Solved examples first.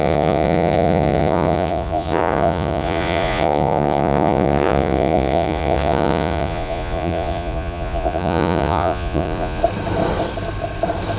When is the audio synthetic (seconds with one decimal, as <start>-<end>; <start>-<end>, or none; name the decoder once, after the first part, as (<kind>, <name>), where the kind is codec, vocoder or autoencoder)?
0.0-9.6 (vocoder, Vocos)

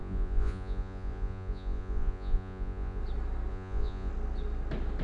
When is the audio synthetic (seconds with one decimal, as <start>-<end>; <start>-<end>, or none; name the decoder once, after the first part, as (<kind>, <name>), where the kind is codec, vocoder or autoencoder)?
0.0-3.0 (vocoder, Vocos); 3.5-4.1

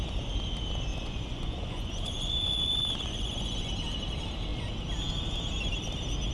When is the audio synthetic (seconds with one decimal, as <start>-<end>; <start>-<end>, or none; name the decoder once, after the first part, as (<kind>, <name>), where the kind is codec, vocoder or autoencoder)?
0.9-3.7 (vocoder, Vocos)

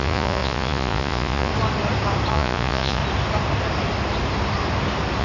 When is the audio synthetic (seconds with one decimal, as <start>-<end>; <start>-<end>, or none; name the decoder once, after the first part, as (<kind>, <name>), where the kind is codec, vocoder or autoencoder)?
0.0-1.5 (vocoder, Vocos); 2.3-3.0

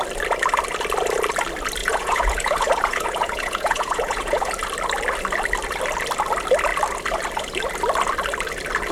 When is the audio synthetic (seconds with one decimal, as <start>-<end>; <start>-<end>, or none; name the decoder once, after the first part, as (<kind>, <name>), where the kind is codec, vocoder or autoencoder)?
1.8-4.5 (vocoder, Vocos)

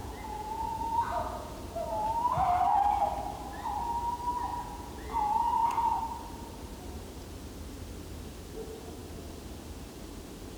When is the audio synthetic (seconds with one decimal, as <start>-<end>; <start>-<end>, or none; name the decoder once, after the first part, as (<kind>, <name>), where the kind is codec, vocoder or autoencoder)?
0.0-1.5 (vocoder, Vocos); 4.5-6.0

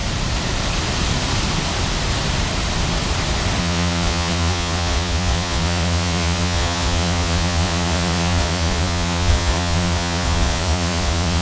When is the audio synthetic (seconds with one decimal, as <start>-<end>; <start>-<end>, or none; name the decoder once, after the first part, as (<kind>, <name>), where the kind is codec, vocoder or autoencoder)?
3.6-11.4 (vocoder, Vocos)

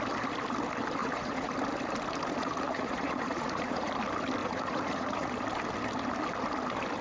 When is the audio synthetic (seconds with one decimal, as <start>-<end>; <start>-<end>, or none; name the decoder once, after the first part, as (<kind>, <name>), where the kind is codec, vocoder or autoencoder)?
1.0-1.5 (vocoder, Vocos); 2.4-3.9; 4.4-5.3